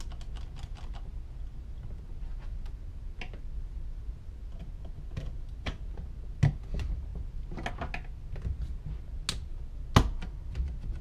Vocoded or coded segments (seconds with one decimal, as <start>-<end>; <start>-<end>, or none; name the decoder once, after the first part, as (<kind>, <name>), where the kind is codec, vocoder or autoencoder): none